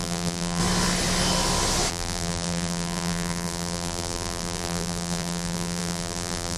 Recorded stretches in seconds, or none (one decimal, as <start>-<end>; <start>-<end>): 0.6-1.9